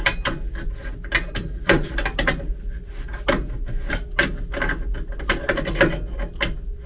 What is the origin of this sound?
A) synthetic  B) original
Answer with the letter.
B